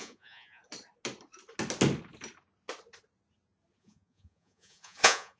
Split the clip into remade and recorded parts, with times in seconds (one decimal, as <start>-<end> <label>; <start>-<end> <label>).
0.0-0.6 remade; 0.6-3.8 recorded; 3.8-5.4 remade